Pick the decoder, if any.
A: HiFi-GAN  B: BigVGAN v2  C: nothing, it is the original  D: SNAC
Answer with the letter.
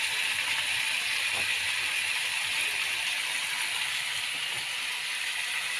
C